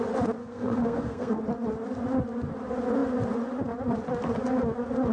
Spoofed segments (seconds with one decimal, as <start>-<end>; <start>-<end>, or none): 0.4-1.4